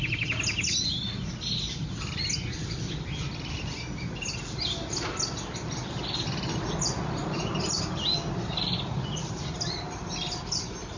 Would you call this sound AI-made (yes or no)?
no